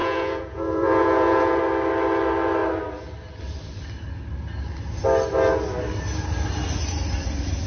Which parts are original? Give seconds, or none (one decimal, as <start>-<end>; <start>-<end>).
1.6-7.7